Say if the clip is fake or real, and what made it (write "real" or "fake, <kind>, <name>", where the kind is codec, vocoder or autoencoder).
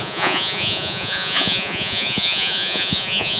fake, vocoder, Vocos